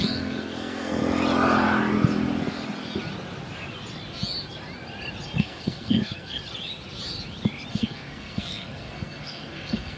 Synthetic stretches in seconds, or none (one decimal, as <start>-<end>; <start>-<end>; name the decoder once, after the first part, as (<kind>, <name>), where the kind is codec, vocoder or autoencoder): 0.0-1.0 (codec, SNAC); 5.4-6.4; 7.7-10.0